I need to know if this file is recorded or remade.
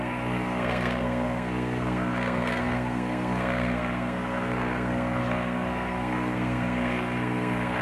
remade